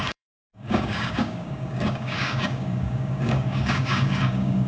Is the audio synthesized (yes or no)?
yes